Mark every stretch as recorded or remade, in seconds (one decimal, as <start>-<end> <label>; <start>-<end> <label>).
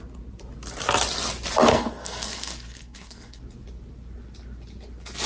0.0-1.7 recorded; 1.7-3.4 remade; 3.4-5.3 recorded